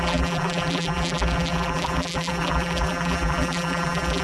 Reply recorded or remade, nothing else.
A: remade